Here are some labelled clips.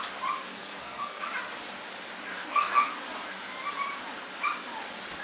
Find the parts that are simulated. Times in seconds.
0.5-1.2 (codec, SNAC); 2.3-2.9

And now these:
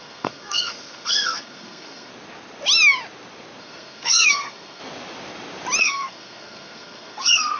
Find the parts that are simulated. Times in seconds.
0.0-2.1 (codec, SNAC); 3.6-4.8; 5.8-7.6

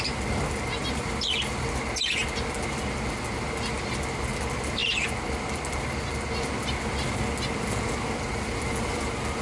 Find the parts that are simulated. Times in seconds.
none

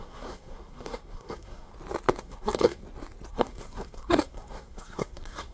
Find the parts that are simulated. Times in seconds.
0.0-1.7 (codec, SNAC); 2.2-2.8; 3.3-5.5

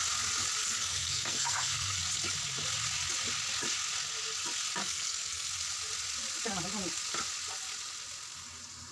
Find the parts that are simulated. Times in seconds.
0.6-2.0 (codec, SNAC); 4.8-5.5

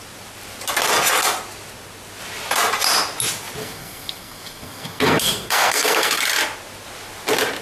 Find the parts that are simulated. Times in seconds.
3.6-6.2 (codec, SNAC)

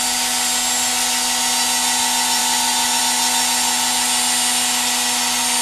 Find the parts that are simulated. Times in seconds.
none